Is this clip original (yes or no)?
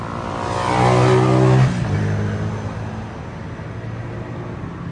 yes